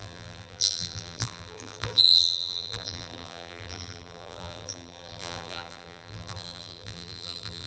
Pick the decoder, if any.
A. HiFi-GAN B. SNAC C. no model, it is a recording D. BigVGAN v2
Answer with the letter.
D